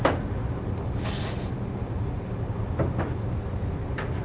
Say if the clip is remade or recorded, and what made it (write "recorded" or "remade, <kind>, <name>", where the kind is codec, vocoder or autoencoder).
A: recorded